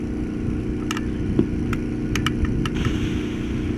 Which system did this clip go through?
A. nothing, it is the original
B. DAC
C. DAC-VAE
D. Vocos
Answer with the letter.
A